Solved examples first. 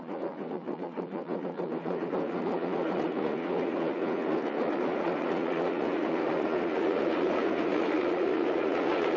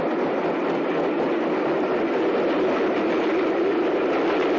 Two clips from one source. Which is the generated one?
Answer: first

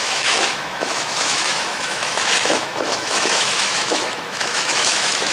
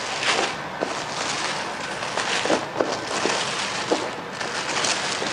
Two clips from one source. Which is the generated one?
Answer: first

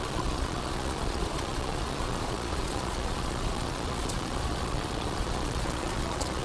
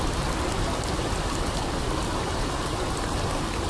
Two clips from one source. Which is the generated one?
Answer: first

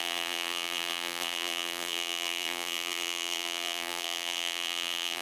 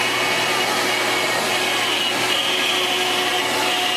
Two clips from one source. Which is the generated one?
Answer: first